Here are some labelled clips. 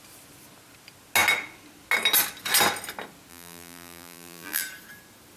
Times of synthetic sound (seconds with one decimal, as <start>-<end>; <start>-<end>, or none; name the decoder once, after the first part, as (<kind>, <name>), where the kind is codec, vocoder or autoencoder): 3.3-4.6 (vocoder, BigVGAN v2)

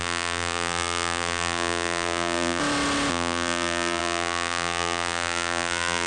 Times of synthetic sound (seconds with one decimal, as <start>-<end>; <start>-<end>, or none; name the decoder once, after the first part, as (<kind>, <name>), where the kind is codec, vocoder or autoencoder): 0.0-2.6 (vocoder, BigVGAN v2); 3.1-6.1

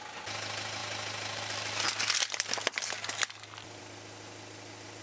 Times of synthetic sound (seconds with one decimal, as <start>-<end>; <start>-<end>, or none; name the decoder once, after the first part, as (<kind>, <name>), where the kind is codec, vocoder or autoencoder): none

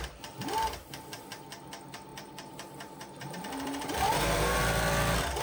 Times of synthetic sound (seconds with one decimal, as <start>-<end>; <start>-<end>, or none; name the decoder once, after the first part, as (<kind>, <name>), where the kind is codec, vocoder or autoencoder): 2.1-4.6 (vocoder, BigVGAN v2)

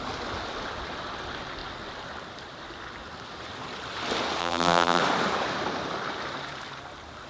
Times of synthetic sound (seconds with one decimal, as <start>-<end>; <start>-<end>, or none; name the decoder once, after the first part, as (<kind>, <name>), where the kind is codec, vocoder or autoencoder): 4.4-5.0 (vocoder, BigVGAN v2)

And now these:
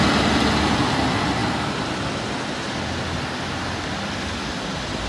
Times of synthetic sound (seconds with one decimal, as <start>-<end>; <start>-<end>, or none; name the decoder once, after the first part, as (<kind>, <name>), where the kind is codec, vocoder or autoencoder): none